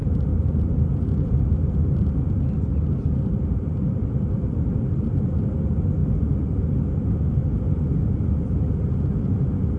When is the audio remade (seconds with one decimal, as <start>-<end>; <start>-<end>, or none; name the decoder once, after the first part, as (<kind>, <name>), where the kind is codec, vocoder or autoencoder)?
0.0-0.8 (vocoder, BigVGAN v2); 2.7-4.7